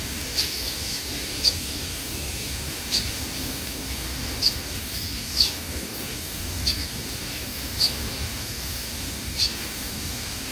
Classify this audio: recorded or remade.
remade